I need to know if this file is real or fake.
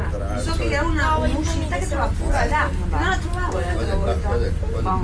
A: real